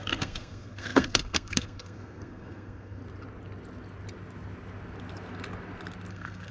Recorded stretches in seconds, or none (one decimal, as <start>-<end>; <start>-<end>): 3.0-6.1